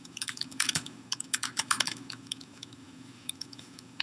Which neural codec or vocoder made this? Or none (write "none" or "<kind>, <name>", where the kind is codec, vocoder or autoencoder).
autoencoder, DAC-VAE